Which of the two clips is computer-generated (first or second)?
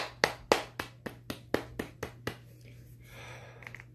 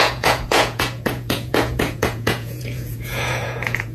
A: second